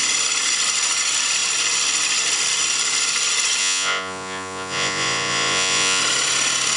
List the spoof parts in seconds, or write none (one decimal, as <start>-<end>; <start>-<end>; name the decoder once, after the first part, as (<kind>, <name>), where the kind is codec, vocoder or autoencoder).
3.6-6.0 (vocoder, Vocos)